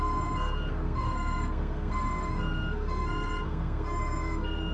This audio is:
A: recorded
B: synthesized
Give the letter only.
B